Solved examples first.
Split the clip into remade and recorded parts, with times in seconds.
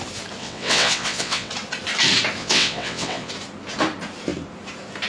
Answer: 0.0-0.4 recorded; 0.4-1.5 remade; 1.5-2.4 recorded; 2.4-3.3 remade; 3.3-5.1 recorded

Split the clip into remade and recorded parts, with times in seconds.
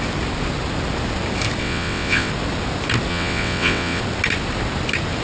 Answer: 0.0-1.6 recorded; 1.6-2.3 remade; 2.3-3.1 recorded; 3.1-4.0 remade; 4.0-5.2 recorded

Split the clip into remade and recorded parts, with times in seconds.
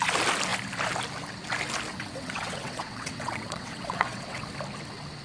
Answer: 0.0-1.9 recorded; 1.9-4.5 remade; 4.5-5.2 recorded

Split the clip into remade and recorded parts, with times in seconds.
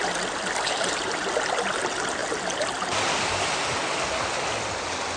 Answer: 0.0-5.2 recorded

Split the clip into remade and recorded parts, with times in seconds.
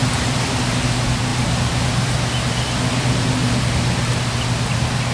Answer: 0.0-5.1 recorded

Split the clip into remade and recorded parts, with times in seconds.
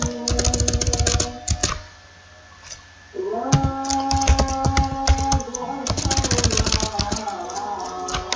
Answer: 0.0-8.4 recorded